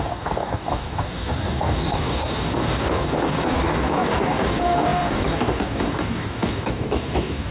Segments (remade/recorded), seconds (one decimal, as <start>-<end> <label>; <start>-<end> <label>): 0.0-7.5 remade

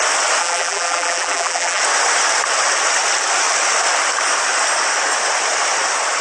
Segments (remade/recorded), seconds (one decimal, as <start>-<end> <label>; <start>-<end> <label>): 0.0-0.4 recorded; 0.4-1.8 remade; 1.8-6.2 recorded

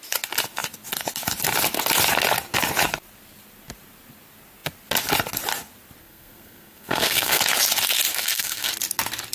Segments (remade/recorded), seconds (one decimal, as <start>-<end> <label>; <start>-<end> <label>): 0.0-6.0 recorded; 6.0-7.4 remade; 7.4-8.1 recorded; 8.1-8.7 remade; 8.7-9.3 recorded

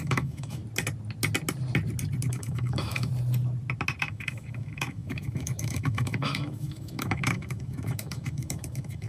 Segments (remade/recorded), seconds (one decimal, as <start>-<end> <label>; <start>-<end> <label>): 0.0-0.6 remade; 0.6-2.3 recorded; 2.3-3.1 remade; 3.1-4.0 recorded; 4.0-9.1 remade